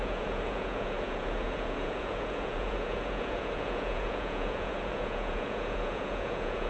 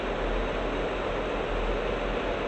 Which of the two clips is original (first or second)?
second